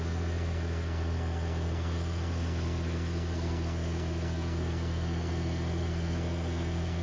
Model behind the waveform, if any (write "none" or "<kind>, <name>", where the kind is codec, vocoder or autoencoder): codec, SNAC